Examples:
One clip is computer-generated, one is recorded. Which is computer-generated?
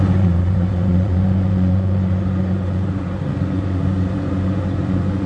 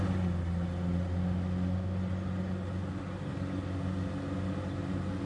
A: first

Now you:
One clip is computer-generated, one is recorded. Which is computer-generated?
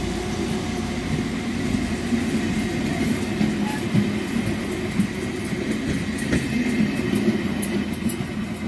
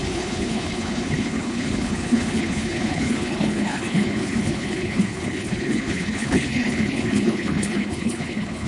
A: second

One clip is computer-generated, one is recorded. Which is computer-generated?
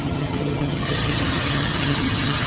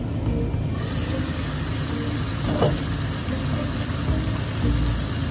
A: first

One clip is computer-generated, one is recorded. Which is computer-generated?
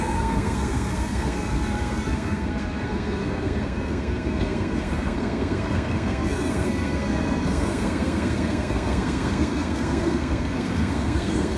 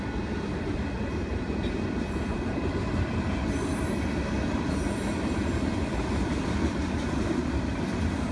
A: first